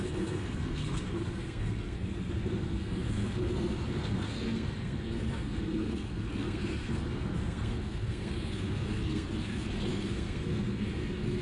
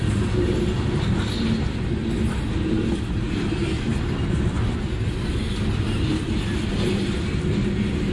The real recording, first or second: second